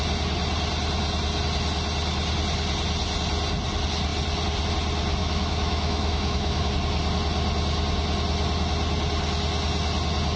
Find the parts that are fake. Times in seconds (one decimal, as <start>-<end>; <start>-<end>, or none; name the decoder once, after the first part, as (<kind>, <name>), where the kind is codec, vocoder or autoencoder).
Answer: 5.2-6.7 (autoencoder, DAC-VAE)